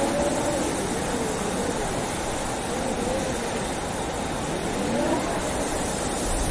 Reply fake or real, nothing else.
real